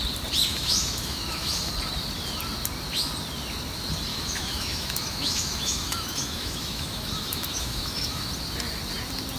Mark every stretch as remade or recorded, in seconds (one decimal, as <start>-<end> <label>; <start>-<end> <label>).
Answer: 0.0-0.5 recorded; 0.5-1.7 remade; 1.7-4.1 recorded; 4.1-8.3 remade; 8.3-9.4 recorded